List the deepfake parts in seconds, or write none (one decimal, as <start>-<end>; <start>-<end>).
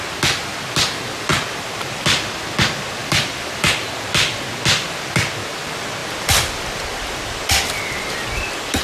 1.3-1.8; 3.0-3.7; 6.0-7.7